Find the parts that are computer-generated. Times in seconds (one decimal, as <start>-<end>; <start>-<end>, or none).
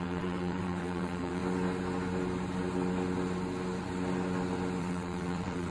0.0-1.4; 4.8-5.7